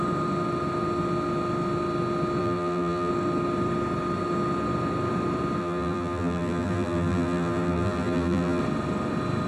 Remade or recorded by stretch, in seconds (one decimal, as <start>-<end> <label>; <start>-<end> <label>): 0.0-2.4 recorded; 2.4-3.1 remade; 3.1-5.6 recorded; 5.6-8.6 remade; 8.6-9.5 recorded